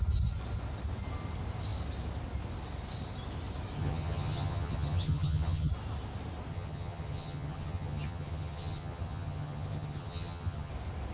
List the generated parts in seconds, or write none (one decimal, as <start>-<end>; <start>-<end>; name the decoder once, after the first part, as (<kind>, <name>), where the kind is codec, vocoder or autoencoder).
3.8-5.7 (vocoder, HiFi-GAN); 6.5-10.7